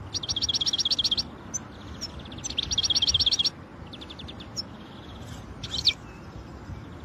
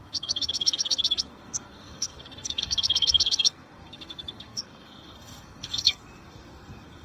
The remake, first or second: second